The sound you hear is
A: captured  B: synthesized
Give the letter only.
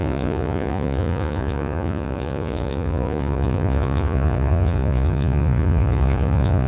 B